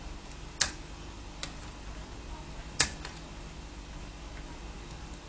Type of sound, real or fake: real